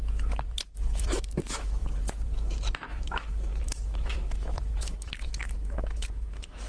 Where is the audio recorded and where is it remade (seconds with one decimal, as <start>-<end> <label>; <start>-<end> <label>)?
0.0-6.7 remade